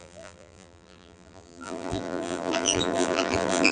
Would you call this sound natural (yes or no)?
no